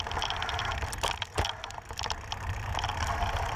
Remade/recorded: recorded